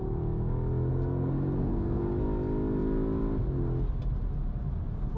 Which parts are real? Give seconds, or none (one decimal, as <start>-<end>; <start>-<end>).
0.0-0.9; 2.0-5.2